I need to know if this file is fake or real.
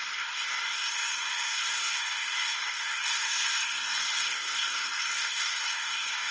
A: fake